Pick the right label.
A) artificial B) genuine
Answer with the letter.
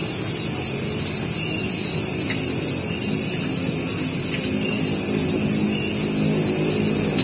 B